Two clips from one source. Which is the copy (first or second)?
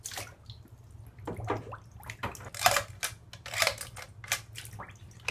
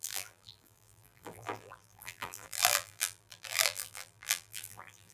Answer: second